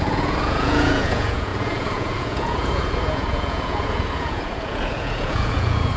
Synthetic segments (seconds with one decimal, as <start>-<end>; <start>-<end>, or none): 0.0-6.0